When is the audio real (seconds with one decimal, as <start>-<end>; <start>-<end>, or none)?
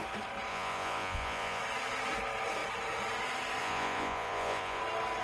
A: 0.0-0.5; 1.6-3.6; 4.8-5.2